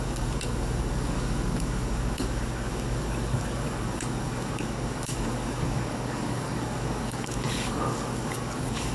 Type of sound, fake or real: fake